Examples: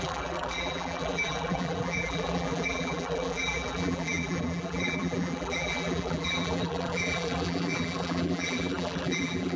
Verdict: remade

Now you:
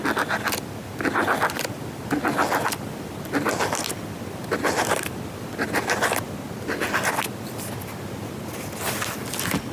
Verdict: recorded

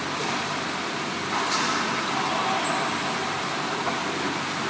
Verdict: remade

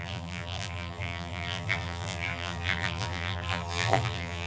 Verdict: remade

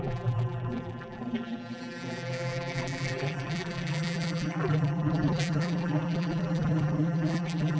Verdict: remade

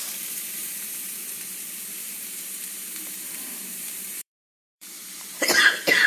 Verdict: remade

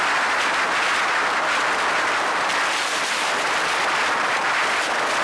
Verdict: remade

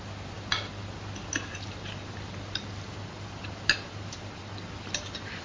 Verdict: recorded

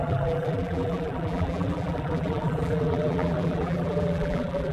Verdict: remade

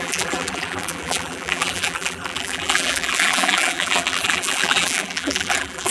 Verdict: remade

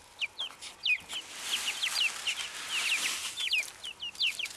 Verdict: recorded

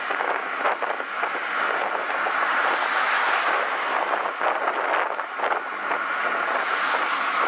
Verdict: recorded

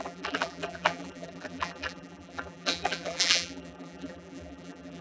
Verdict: remade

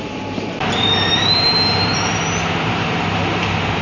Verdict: remade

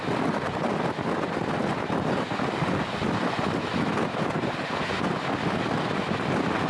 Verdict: remade